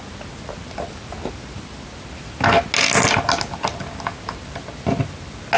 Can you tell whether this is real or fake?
real